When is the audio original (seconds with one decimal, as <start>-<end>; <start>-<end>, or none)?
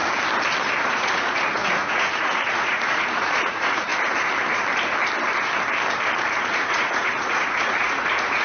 0.0-0.8; 3.9-6.4